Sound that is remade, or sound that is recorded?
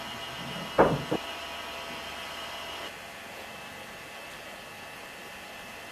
remade